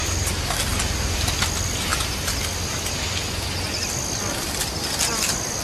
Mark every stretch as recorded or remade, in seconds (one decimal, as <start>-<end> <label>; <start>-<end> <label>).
0.0-0.8 remade; 0.8-5.6 recorded